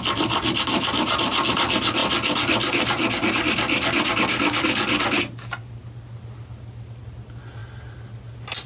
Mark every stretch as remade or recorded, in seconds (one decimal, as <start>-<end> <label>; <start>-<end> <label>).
0.0-8.7 recorded